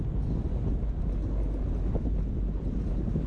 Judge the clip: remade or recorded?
recorded